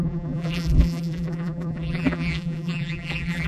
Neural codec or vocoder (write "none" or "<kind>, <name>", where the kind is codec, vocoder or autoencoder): vocoder, BigVGAN v2